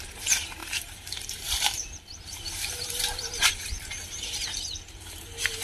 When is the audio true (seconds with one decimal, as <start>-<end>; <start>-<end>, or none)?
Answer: none